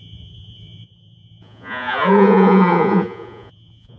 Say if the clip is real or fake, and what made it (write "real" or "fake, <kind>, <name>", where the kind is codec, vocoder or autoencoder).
fake, vocoder, Vocos